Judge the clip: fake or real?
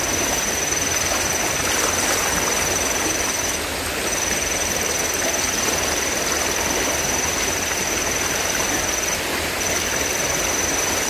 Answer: real